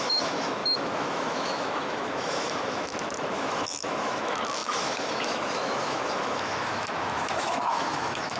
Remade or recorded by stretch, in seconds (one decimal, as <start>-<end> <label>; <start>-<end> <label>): 0.0-8.4 remade